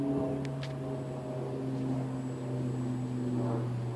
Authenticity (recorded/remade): recorded